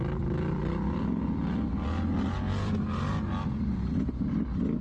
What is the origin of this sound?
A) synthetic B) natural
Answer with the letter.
B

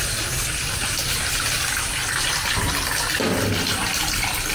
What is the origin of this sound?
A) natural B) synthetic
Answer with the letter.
A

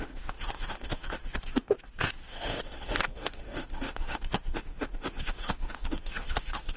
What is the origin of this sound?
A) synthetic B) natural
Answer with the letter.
A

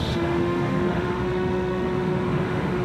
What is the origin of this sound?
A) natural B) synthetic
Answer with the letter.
B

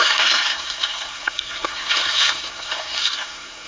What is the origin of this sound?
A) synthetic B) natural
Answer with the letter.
A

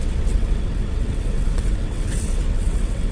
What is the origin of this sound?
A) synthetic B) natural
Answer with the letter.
A